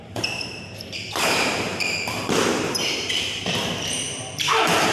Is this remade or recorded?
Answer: remade